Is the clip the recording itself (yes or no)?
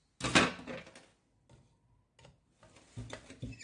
yes